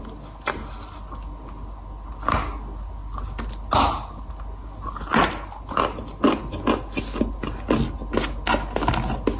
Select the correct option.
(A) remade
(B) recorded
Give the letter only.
B